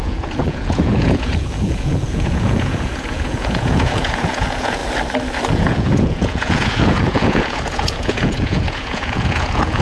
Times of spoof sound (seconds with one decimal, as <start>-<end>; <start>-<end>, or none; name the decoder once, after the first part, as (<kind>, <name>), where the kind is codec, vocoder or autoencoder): 0.0-4.8 (vocoder, Vocos); 5.5-9.8